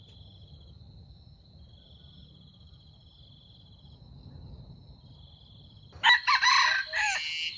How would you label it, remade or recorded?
recorded